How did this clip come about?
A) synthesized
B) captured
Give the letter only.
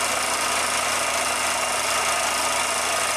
B